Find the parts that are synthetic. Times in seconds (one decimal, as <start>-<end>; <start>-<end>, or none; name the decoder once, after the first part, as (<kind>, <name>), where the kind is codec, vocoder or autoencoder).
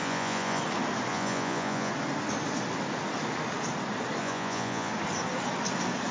0.0-0.6 (vocoder, Vocos); 1.1-1.9; 4.2-4.9